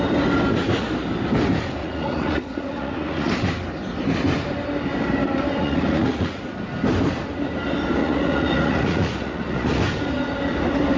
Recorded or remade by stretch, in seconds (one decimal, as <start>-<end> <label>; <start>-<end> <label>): 0.0-1.8 recorded; 1.8-3.3 remade; 3.3-5.6 recorded; 5.6-6.4 remade; 6.4-8.0 recorded; 8.0-9.8 remade; 9.8-11.0 recorded